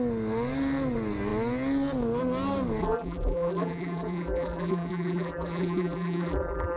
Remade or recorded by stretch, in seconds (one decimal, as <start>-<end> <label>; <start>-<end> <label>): 0.0-2.8 recorded; 2.8-6.8 remade